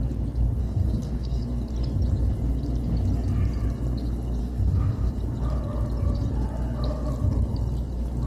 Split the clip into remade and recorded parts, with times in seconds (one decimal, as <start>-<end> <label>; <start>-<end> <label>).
0.0-0.6 recorded; 0.6-1.4 remade; 1.4-4.4 recorded; 4.4-5.1 remade; 5.1-8.3 recorded